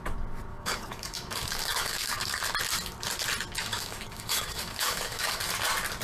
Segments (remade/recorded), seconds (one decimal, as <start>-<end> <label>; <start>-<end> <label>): 0.0-0.5 recorded; 0.5-2.4 remade; 2.4-3.6 recorded; 3.6-5.4 remade; 5.4-6.0 recorded